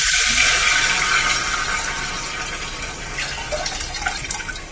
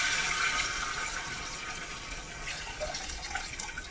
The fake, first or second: second